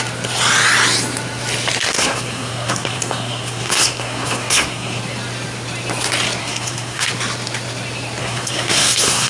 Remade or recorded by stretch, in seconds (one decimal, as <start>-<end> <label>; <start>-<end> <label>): 0.0-1.8 recorded; 1.8-5.0 remade; 5.0-6.4 recorded; 6.4-7.1 remade; 7.1-8.2 recorded; 8.2-9.3 remade